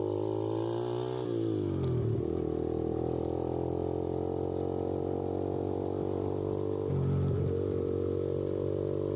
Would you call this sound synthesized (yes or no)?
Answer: no